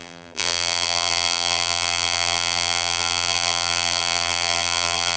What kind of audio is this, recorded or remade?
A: remade